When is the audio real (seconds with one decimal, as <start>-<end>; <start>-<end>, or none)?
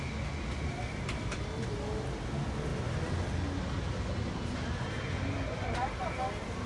0.0-6.7